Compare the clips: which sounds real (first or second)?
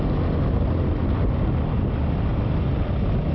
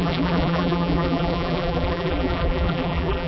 first